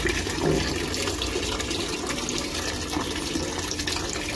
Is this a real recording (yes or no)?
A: yes